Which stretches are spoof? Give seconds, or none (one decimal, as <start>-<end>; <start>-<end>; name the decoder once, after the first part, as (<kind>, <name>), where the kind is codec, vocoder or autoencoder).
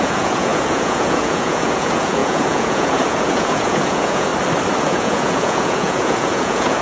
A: 0.0-4.3 (vocoder, Vocos); 4.8-6.8